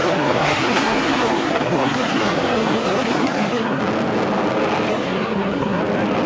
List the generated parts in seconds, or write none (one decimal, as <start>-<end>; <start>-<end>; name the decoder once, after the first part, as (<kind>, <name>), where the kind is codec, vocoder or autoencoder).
0.0-3.8 (codec, SNAC); 4.9-5.8